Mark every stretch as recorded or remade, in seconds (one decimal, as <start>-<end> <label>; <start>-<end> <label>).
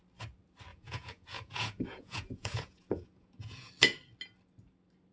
0.0-0.7 recorded; 0.7-3.7 remade; 3.7-5.1 recorded